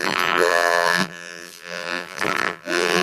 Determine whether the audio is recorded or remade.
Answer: remade